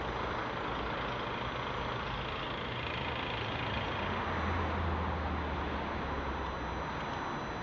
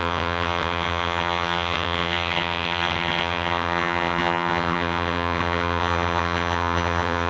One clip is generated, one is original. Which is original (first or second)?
first